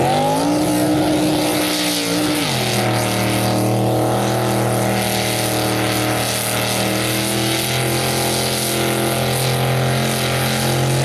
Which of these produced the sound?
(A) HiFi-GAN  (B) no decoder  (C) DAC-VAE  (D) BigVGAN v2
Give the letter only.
B